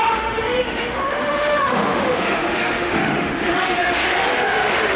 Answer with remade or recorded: remade